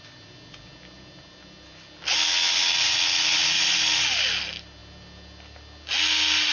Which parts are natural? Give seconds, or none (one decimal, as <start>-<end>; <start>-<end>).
0.0-6.5